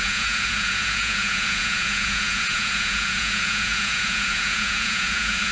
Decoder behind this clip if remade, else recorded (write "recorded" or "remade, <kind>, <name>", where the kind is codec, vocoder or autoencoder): remade, vocoder, Vocos